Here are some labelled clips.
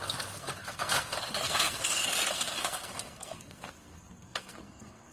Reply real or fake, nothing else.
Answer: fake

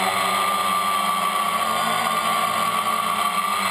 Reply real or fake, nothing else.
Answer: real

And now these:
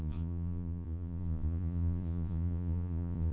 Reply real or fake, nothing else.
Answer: fake